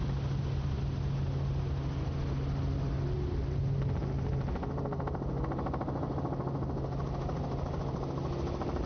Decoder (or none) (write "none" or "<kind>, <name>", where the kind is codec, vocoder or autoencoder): none